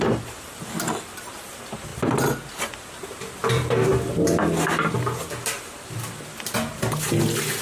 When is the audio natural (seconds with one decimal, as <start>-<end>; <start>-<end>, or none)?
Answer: 0.0-7.6

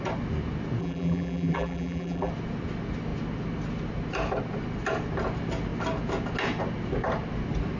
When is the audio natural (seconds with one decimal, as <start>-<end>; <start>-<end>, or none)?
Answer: 0.0-0.8; 2.3-7.8

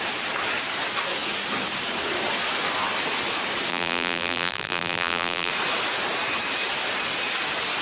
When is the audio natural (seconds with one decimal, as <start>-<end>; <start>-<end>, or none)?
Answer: 0.0-3.7; 5.5-7.8